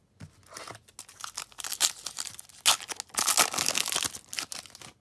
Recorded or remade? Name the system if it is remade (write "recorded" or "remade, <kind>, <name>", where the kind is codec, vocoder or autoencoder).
recorded